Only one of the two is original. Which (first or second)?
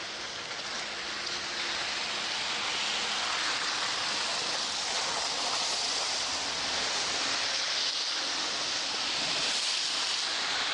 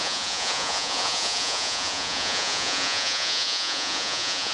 first